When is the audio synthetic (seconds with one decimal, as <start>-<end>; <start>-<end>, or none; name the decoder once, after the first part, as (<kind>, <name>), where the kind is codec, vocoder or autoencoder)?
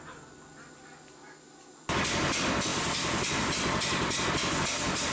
none